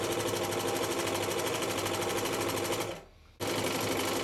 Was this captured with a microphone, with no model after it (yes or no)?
yes